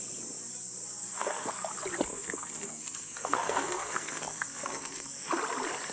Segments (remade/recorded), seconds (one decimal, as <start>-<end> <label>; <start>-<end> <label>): 0.0-1.0 recorded; 1.0-1.7 remade; 1.7-2.1 recorded; 2.1-5.3 remade; 5.3-5.9 recorded